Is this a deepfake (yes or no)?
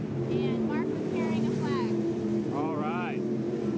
no